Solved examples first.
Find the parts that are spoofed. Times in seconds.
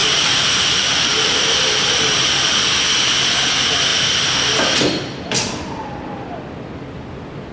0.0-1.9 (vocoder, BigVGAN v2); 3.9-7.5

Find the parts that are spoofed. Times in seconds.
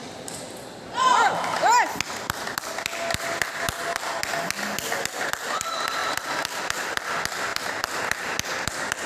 none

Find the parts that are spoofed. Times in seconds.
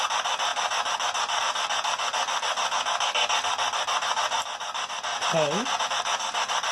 none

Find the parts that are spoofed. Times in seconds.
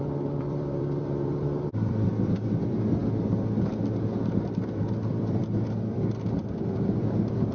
0.0-3.0 (vocoder, BigVGAN v2); 4.8-7.5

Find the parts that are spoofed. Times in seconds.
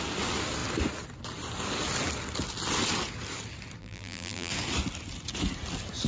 3.8-4.5 (vocoder, BigVGAN v2)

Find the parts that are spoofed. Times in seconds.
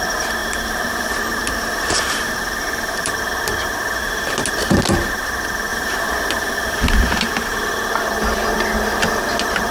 0.4-3.2 (vocoder, BigVGAN v2); 5.7-7.2